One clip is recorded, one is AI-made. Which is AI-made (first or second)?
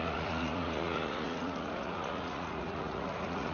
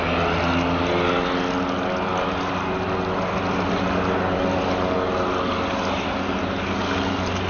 first